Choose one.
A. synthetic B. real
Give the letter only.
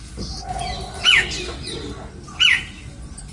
B